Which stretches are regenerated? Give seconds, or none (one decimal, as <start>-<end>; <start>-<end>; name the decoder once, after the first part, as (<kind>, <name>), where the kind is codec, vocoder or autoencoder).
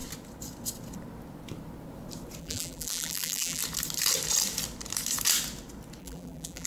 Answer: 2.4-3.6 (vocoder, BigVGAN v2); 6.0-6.7